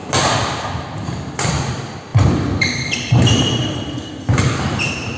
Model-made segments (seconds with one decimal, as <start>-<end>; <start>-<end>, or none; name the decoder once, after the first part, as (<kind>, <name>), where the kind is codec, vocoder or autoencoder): 2.1-4.1 (vocoder, BigVGAN v2)